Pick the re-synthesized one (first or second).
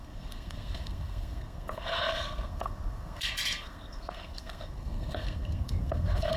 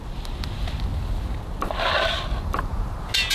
first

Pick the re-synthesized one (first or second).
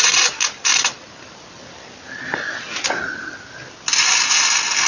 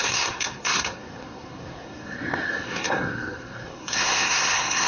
second